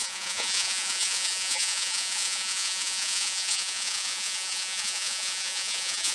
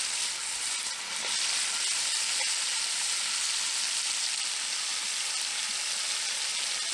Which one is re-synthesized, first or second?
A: first